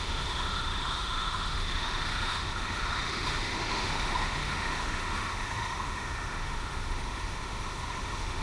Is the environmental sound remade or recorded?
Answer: remade